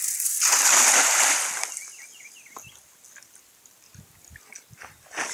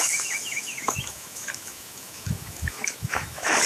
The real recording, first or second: first